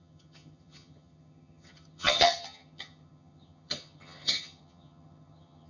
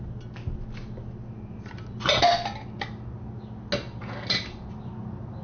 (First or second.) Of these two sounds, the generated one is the first